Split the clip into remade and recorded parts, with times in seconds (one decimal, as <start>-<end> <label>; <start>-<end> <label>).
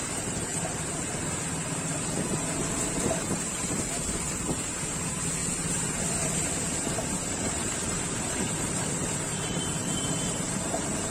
0.0-0.5 remade; 0.5-3.6 recorded; 3.6-5.4 remade; 5.4-6.9 recorded; 6.9-11.1 remade